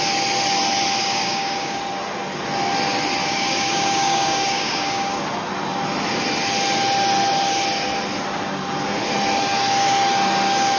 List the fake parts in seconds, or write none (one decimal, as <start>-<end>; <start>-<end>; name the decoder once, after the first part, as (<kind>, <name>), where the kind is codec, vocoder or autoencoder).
1.0-1.8 (codec, DAC); 3.2-5.2